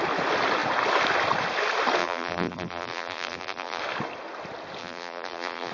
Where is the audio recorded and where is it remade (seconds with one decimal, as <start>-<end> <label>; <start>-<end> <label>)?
0.0-2.0 recorded; 2.0-3.8 remade; 3.8-4.8 recorded; 4.8-5.7 remade